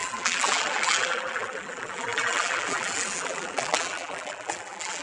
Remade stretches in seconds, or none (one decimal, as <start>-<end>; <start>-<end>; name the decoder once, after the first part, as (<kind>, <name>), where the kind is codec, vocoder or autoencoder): 0.0-5.0 (vocoder, BigVGAN v2)